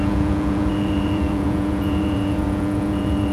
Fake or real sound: fake